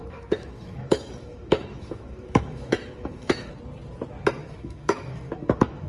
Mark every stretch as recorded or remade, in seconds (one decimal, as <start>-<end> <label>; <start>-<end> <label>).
0.0-3.5 remade; 3.5-4.4 recorded; 4.4-5.9 remade